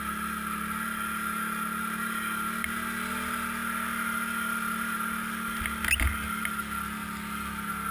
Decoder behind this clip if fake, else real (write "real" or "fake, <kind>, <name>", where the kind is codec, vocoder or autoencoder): real